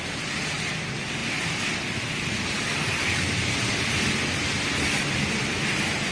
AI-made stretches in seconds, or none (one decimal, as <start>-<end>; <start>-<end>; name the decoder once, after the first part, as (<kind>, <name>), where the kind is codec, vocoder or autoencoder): none